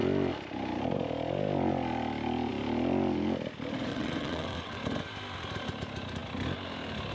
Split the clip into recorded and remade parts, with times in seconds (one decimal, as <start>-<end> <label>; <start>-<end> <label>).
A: 0.0-3.9 recorded; 3.9-4.8 remade; 4.8-7.1 recorded